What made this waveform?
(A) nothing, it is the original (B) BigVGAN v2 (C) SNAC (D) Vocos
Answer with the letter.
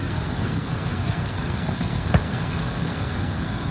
C